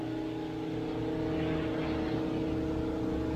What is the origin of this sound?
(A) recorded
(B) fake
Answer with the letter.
A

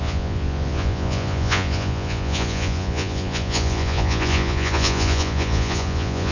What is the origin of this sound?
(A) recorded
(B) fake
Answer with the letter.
B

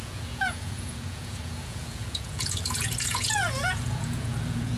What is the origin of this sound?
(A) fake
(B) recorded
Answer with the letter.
A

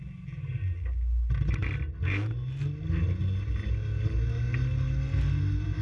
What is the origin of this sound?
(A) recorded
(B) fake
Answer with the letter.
A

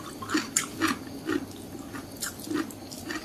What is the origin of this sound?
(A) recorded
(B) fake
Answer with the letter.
A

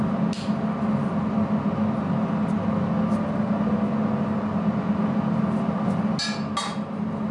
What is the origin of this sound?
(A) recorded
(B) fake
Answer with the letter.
A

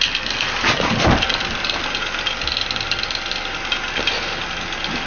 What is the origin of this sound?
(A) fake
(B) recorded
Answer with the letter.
B